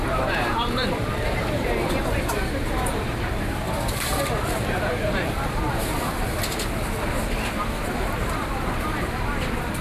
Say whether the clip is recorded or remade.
remade